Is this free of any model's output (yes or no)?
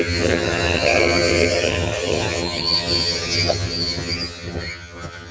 no